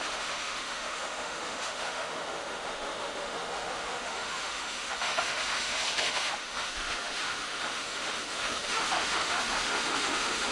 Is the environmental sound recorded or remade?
remade